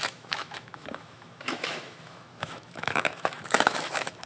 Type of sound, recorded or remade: remade